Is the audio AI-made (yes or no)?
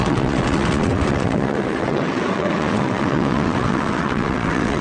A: yes